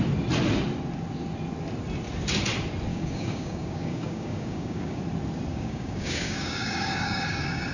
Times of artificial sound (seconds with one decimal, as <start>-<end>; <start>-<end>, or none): 2.9-5.0; 5.5-7.7